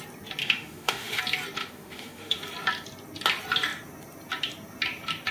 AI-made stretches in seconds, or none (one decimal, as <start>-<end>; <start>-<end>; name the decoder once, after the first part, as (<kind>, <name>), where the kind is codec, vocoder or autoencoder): 0.4-1.2 (autoencoder, DAC-VAE); 1.6-2.4